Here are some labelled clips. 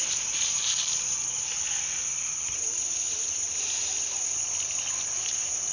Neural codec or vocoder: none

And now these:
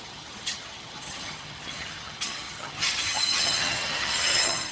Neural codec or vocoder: vocoder, HiFi-GAN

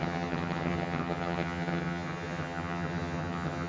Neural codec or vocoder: vocoder, HiFi-GAN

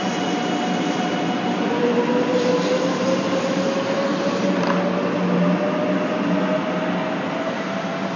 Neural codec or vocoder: none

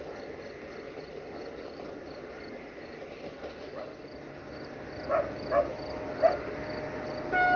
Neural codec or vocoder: none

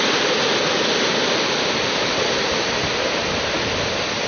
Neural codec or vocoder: none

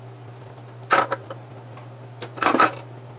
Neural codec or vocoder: none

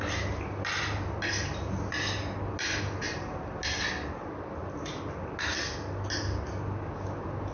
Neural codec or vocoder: none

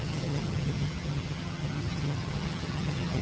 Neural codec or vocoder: vocoder, HiFi-GAN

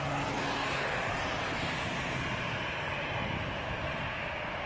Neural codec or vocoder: none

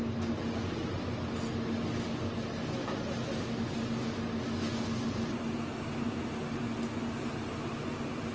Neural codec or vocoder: none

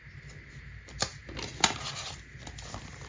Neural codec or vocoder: none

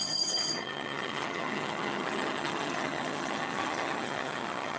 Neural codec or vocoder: vocoder, HiFi-GAN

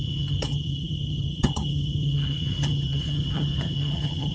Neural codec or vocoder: vocoder, HiFi-GAN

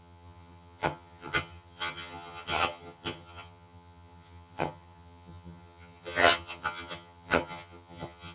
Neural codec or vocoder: vocoder, HiFi-GAN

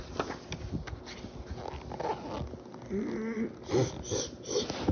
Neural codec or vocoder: none